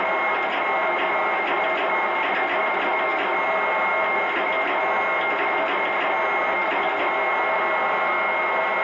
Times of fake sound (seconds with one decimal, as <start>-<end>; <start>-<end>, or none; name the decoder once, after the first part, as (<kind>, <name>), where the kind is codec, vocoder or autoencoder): none

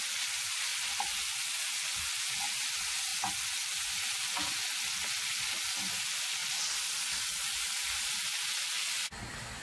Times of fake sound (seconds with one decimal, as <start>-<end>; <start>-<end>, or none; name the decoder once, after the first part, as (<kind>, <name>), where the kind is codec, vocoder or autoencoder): none

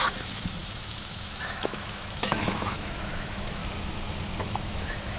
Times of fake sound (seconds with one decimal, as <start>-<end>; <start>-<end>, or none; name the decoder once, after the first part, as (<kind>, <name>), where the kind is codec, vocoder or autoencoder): 0.0-3.6 (autoencoder, DAC-VAE); 4.4-5.2

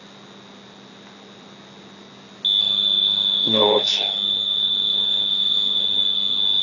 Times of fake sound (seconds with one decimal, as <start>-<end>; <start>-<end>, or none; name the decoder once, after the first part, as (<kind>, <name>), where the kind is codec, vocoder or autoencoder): 2.6-6.6 (codec, SNAC)

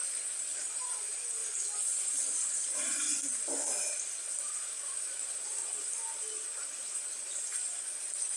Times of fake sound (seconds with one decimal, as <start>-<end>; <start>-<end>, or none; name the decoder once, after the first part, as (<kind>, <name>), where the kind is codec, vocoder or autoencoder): 0.7-1.4 (vocoder, BigVGAN v2); 2.0-3.1; 4.0-5.6; 6.6-8.4

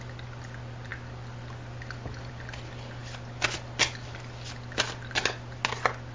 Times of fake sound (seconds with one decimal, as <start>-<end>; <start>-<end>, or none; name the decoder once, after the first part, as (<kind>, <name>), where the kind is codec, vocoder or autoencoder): none